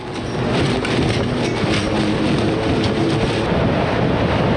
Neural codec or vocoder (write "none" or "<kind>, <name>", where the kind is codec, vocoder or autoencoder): none